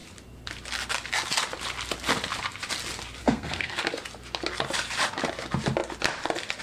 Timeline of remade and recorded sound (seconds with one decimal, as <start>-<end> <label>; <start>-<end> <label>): 0.0-3.2 recorded; 3.2-3.8 remade; 3.8-6.6 recorded